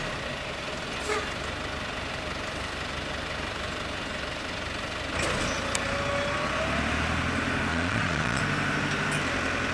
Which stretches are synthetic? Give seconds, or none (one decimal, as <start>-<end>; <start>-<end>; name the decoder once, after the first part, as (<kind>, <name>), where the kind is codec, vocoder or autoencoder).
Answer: 7.7-8.4 (vocoder, Vocos)